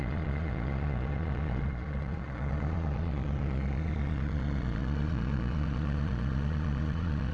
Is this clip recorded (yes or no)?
no